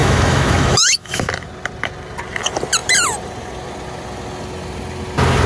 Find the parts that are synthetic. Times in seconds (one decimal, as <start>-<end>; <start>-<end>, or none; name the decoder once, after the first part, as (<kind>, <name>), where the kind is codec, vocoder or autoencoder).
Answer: 0.0-1.3 (autoencoder, DAC-VAE)

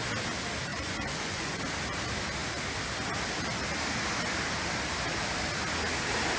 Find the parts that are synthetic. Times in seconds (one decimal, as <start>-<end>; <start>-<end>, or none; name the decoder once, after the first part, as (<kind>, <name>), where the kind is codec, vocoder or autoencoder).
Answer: 0.7-1.6 (vocoder, Vocos)

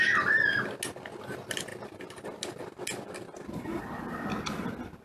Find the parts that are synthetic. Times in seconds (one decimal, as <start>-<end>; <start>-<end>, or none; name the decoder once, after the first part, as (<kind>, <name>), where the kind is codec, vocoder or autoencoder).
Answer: none